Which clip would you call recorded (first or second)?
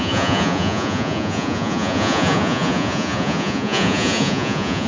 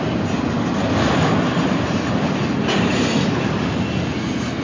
second